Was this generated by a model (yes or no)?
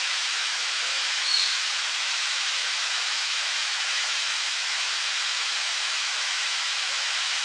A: yes